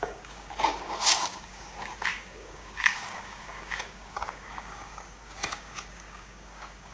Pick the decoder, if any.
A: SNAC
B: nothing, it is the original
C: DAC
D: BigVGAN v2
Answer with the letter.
C